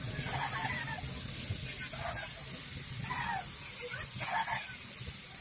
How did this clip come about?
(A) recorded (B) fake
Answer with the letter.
A